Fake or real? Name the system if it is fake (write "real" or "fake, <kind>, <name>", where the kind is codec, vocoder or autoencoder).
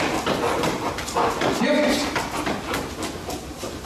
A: real